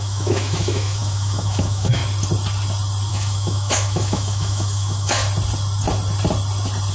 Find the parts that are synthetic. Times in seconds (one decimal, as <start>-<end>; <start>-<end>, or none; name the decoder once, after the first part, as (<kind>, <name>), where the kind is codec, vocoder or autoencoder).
0.0-2.0 (autoencoder, DAC-VAE); 3.1-5.2